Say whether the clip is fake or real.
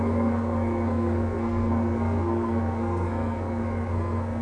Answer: fake